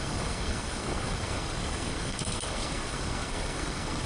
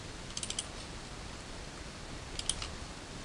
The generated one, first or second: first